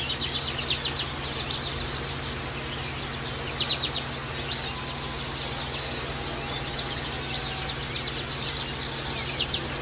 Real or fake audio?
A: real